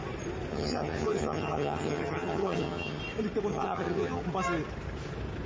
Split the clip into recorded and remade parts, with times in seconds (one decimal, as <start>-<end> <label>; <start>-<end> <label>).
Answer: 0.0-0.5 recorded; 0.5-3.0 remade; 3.0-3.5 recorded; 3.5-4.2 remade; 4.2-5.5 recorded